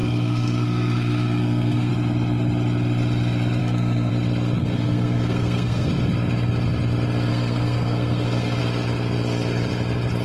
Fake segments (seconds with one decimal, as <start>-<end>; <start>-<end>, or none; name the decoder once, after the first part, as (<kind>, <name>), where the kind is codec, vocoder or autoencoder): 0.0-1.9 (codec, SNAC); 3.6-4.1; 4.6-5.9; 7.3-8.6